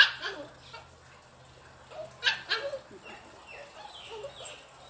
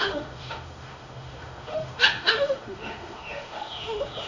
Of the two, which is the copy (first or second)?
second